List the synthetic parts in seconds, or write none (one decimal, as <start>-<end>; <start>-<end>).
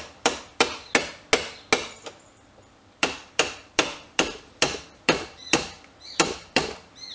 0.0-0.9; 2.2-7.1